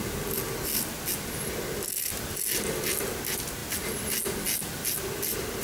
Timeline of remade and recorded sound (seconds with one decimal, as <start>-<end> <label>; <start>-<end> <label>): 0.0-5.6 recorded